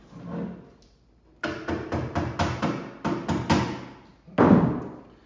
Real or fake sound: real